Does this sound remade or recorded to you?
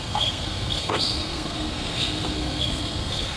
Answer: remade